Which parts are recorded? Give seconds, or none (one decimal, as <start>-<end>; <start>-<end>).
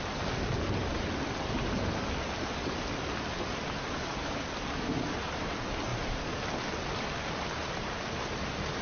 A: 0.0-8.8